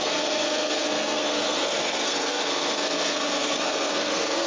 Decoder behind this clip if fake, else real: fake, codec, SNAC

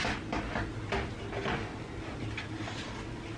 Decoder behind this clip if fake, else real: real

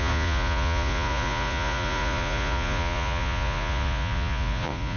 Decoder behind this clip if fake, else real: fake, vocoder, Vocos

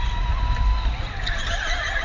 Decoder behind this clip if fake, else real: real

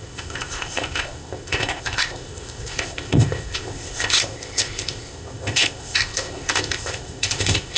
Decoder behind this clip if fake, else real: fake, codec, ZipCodec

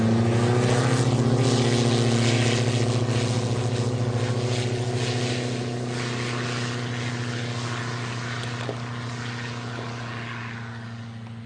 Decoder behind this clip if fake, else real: real